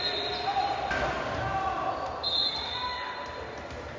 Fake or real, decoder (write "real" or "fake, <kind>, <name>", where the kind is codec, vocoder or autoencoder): real